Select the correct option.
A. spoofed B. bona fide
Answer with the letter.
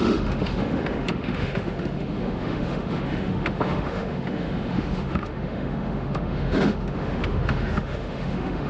A